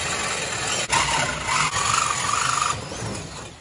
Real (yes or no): no